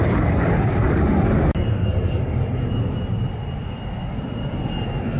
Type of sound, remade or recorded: recorded